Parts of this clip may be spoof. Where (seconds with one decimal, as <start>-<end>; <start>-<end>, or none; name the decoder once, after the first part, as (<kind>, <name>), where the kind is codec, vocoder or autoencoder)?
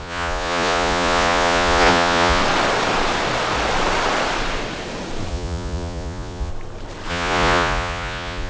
0.0-2.4 (vocoder, Vocos); 5.3-6.5; 7.1-8.5